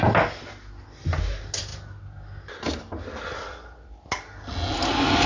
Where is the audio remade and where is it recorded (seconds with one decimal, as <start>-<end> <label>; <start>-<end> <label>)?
0.0-5.3 recorded

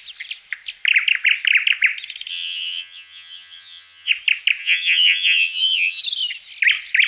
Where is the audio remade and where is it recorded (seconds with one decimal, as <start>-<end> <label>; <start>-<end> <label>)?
0.0-2.3 recorded; 2.3-4.1 remade; 4.1-4.6 recorded; 4.6-6.0 remade; 6.0-7.1 recorded

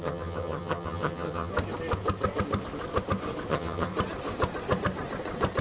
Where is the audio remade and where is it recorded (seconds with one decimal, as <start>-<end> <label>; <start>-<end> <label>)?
0.0-1.5 remade; 1.5-3.5 recorded; 3.5-3.9 remade; 3.9-5.6 recorded

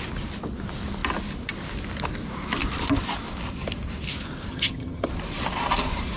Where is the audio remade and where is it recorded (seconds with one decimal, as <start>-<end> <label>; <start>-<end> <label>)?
0.0-4.5 recorded; 4.5-5.1 remade; 5.1-6.2 recorded

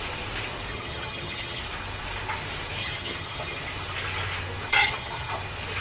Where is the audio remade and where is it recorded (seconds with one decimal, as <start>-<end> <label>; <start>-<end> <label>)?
0.0-0.7 recorded; 0.7-1.6 remade; 1.6-2.8 recorded; 2.8-3.6 remade; 3.6-4.7 recorded; 4.7-5.3 remade; 5.3-5.8 recorded